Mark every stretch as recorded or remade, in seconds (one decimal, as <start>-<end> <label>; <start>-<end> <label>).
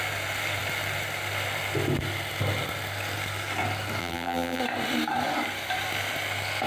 0.0-4.0 recorded; 4.0-4.6 remade; 4.6-6.7 recorded